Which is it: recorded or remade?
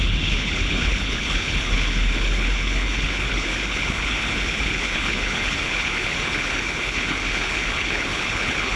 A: remade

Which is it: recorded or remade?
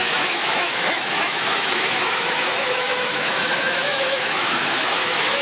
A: remade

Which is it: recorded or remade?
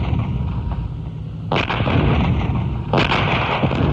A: recorded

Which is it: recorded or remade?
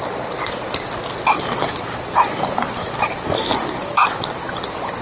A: recorded